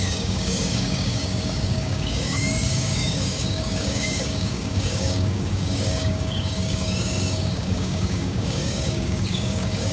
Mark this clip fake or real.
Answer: fake